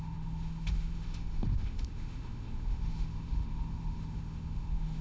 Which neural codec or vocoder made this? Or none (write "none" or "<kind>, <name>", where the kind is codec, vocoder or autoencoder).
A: autoencoder, DAC-VAE